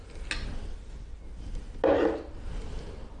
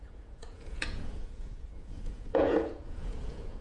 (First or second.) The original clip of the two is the first